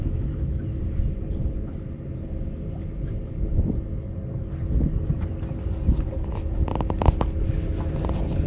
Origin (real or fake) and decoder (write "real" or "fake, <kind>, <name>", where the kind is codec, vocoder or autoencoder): real